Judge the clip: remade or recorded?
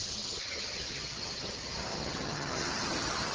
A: remade